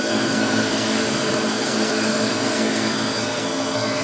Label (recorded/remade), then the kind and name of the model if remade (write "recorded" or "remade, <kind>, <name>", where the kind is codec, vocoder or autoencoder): remade, codec, SNAC